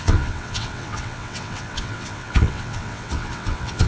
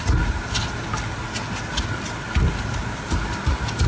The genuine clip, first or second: second